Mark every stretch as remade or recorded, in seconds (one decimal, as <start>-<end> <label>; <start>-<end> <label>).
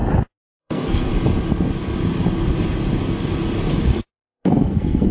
0.0-0.6 recorded; 0.6-1.1 remade; 1.1-3.8 recorded; 3.8-5.1 remade